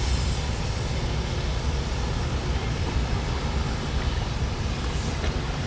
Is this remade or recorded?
recorded